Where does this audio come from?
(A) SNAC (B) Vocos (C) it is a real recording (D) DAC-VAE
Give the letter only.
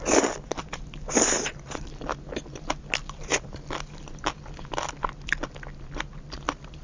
C